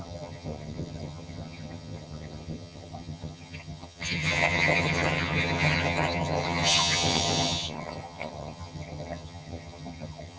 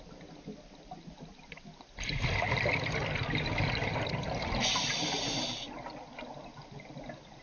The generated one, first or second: first